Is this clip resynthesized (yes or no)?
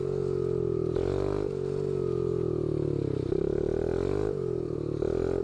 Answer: no